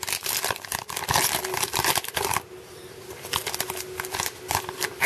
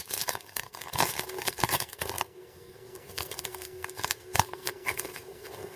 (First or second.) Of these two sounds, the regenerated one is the second